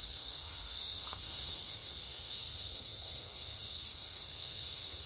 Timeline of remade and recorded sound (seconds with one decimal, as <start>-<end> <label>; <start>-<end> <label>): 0.0-5.1 remade